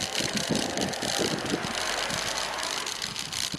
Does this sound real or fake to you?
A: real